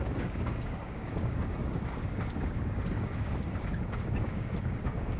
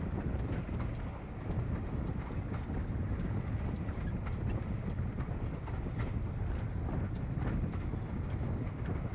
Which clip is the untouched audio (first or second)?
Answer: second